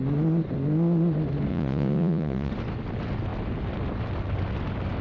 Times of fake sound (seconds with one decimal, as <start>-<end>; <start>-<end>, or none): 1.5-2.5